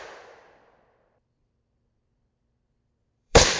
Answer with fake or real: fake